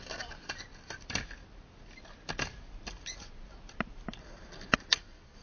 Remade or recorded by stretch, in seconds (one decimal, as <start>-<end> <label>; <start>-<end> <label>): 0.0-0.7 remade; 0.7-3.9 recorded; 3.9-5.4 remade